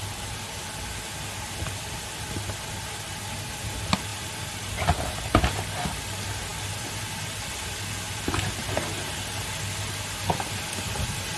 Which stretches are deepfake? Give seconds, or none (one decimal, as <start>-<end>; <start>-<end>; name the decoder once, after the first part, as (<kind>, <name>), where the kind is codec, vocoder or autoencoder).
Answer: none